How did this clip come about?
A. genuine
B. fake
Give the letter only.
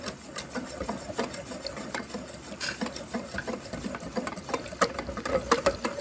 A